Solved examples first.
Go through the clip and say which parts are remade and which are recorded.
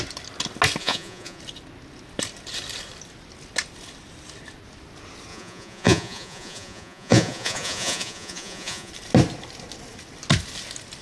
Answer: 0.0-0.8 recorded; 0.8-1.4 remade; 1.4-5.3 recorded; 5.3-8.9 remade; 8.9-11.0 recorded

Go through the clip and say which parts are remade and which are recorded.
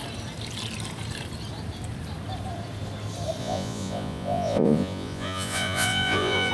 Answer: 0.0-3.4 recorded; 3.4-6.5 remade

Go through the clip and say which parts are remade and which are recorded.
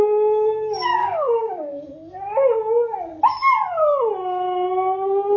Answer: 0.0-1.0 recorded; 1.0-2.1 remade; 2.1-5.4 recorded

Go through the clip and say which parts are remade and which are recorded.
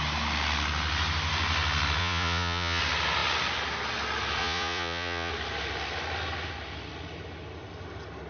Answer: 0.0-2.0 recorded; 2.0-2.8 remade; 2.8-4.4 recorded; 4.4-5.3 remade; 5.3-8.3 recorded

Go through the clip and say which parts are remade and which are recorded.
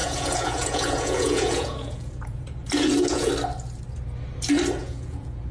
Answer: 0.0-3.3 remade; 3.3-4.8 recorded; 4.8-5.5 remade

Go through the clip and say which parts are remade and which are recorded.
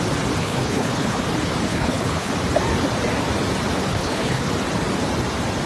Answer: 0.0-0.4 recorded; 0.4-1.2 remade; 1.2-1.7 recorded; 1.7-2.3 remade; 2.3-3.9 recorded; 3.9-4.5 remade; 4.5-5.7 recorded